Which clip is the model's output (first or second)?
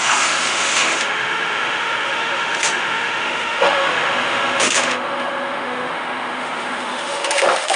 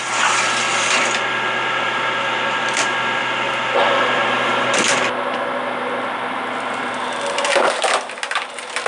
first